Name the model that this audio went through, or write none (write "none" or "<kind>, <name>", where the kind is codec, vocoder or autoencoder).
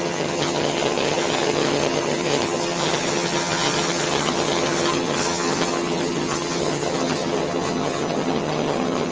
vocoder, HiFi-GAN